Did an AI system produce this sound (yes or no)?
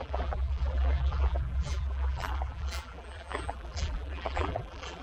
yes